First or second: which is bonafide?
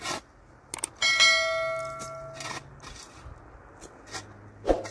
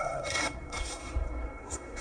first